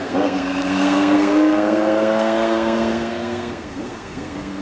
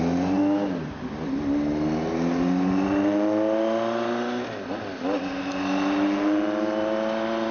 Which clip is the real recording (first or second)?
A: second